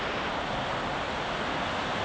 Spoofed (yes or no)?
no